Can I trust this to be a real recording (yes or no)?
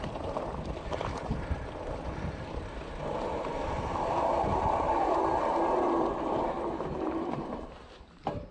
no